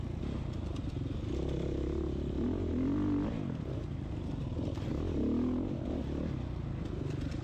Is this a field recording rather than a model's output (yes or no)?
yes